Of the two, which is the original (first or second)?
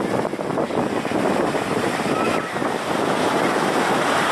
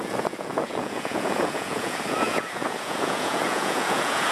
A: first